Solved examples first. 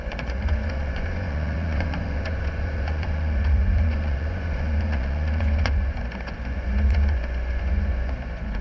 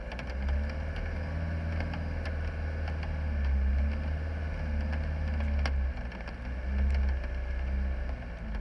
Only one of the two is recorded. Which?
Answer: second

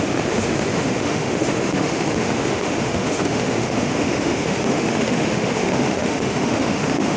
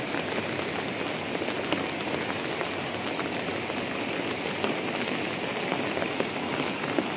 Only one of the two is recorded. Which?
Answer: second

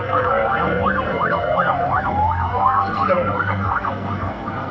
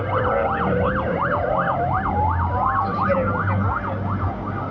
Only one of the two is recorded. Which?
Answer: second